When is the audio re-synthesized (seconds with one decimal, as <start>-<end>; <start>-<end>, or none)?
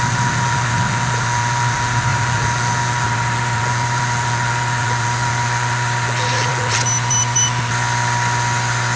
none